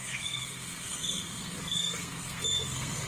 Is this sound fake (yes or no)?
yes